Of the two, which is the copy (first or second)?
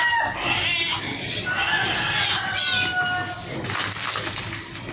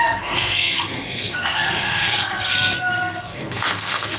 second